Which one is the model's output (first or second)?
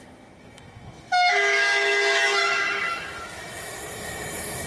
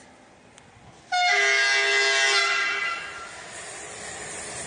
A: first